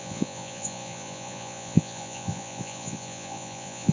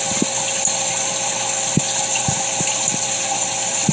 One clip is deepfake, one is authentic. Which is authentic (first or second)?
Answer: second